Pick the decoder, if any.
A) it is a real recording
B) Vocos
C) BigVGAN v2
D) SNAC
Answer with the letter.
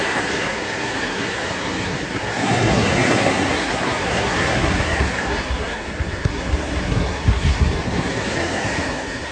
D